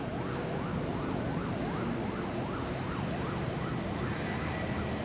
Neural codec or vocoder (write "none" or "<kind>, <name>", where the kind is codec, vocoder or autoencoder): none